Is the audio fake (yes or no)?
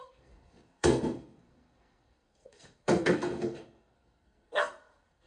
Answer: yes